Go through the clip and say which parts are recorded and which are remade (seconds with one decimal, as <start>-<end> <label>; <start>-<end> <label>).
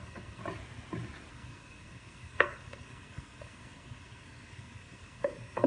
0.0-0.4 remade; 0.4-1.3 recorded; 1.3-5.7 remade